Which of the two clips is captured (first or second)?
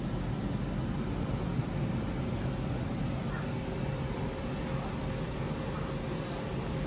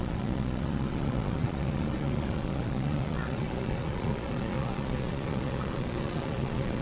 first